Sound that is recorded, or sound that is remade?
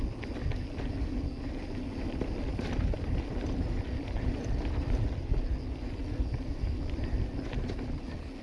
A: recorded